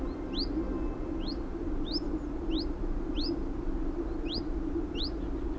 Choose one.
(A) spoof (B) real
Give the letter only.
B